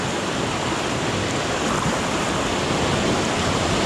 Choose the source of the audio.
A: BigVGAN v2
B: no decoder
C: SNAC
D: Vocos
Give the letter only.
B